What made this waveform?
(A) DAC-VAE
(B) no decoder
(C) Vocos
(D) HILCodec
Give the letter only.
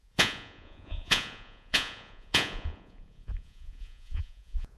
C